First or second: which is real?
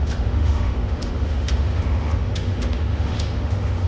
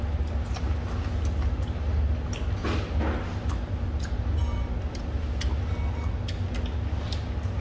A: second